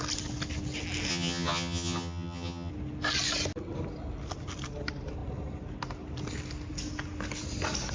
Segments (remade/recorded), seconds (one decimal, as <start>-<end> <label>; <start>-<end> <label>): 0.0-1.1 recorded; 1.1-2.7 remade; 2.7-7.9 recorded